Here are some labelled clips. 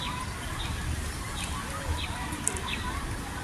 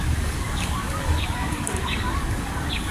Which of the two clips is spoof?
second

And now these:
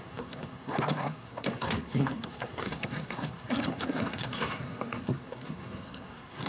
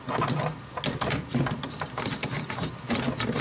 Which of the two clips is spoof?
first